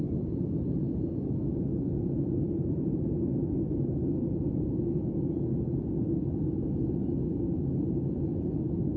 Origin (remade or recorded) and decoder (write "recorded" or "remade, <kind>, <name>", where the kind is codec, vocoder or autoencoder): recorded